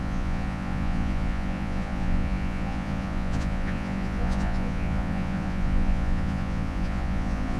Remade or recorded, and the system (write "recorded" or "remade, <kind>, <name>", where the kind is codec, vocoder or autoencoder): remade, vocoder, Vocos